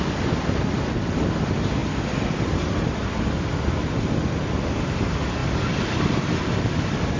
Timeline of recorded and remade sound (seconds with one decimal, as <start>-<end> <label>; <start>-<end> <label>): 0.0-7.2 recorded